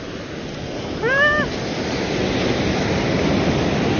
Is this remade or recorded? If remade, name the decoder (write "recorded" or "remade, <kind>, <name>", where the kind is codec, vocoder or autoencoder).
recorded